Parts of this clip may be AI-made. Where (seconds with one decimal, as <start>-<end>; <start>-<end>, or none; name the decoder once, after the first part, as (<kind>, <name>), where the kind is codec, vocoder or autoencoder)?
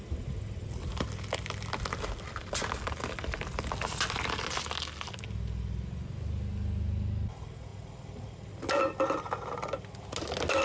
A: 7.7-8.5 (vocoder, BigVGAN v2)